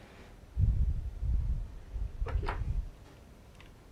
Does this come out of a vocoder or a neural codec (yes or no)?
no